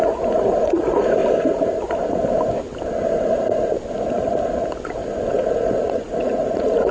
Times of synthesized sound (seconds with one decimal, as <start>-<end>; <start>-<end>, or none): 0.0-1.2; 5.3-6.9